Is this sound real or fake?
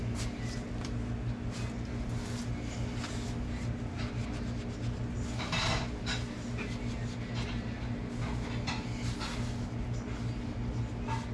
real